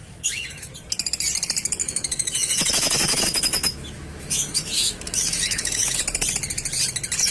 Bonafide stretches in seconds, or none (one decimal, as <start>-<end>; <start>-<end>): 0.7-1.8; 6.0-7.3